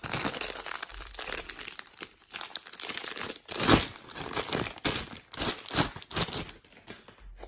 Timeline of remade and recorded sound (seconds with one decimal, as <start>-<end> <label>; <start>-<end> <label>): 0.0-2.7 remade; 2.7-7.5 recorded